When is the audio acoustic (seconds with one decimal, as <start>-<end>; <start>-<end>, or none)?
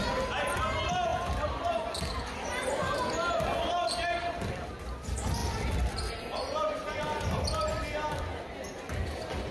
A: 0.0-9.5